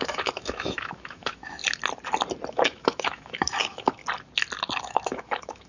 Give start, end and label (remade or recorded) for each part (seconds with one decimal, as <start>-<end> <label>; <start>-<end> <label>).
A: 0.0-1.6 remade; 1.6-2.5 recorded; 2.5-4.0 remade; 4.0-4.8 recorded; 4.8-5.7 remade